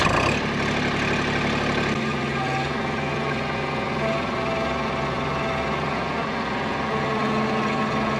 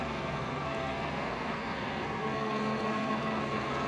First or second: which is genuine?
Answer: first